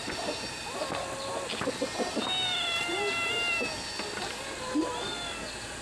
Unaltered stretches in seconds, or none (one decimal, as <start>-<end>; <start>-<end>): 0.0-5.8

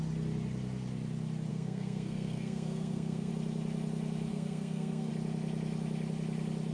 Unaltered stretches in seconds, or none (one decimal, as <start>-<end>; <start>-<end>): 0.0-1.5; 3.3-4.3; 5.1-6.7

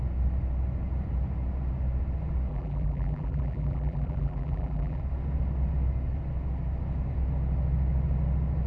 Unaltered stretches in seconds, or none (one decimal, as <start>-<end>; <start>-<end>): 0.0-2.5; 5.0-8.7

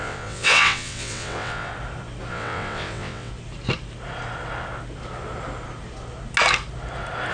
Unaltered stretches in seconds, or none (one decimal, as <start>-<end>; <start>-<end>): 1.7-2.3; 3.3-7.3